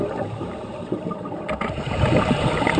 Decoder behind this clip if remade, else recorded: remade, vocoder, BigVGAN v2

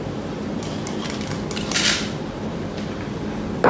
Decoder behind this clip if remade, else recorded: recorded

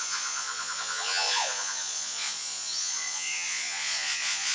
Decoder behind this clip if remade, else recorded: remade, vocoder, Vocos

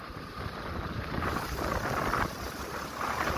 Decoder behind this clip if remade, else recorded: recorded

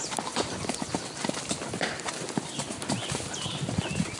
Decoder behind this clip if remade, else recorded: recorded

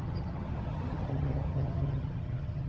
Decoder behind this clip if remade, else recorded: remade, vocoder, HiFi-GAN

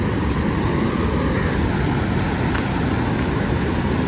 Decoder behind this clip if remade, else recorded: recorded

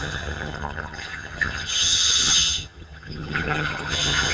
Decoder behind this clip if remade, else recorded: remade, vocoder, HiFi-GAN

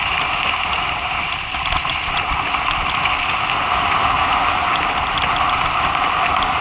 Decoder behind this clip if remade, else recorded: recorded